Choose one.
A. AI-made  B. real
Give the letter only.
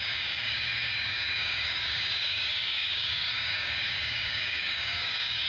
A